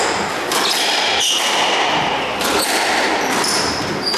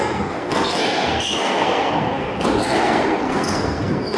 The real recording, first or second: first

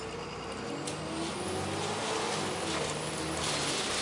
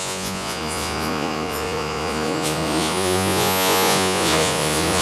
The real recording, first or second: first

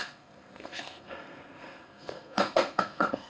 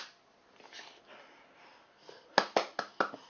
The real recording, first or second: second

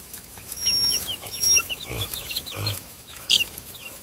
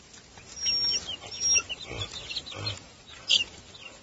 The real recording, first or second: second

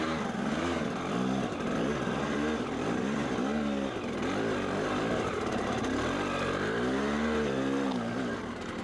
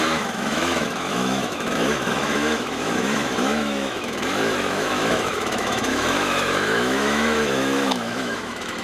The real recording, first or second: first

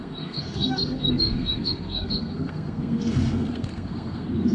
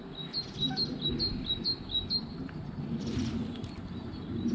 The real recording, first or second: second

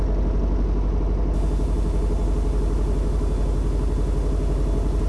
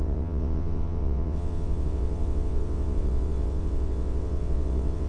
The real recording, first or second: first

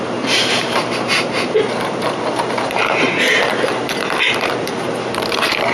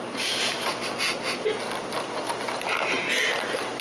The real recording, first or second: second